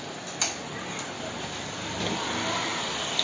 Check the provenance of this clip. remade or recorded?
recorded